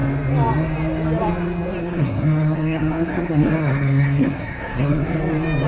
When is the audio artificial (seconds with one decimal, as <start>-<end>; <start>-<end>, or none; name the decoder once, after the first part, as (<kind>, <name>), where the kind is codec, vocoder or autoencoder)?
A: 1.8-5.2 (codec, SNAC)